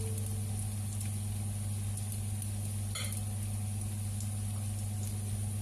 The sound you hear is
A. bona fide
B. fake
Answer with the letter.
A